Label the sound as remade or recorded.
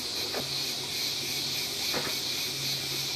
recorded